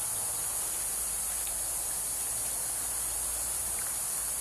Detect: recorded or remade recorded